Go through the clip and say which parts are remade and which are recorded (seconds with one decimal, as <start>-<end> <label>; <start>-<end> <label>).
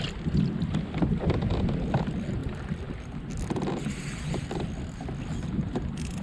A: 0.0-2.4 recorded; 2.4-3.3 remade; 3.3-6.2 recorded